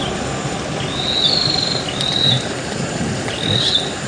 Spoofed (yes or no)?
no